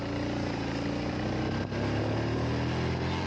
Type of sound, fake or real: real